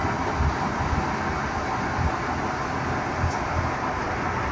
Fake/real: real